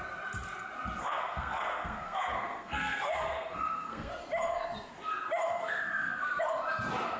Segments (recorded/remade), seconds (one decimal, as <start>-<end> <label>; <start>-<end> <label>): 0.0-1.0 recorded; 1.0-4.1 remade; 4.1-5.6 recorded; 5.6-6.4 remade; 6.4-7.2 recorded